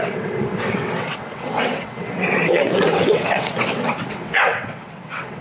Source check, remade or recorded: remade